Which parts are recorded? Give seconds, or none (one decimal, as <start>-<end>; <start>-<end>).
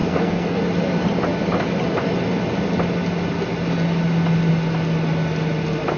0.6-6.0